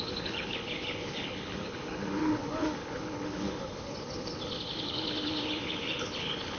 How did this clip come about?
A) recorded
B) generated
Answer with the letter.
B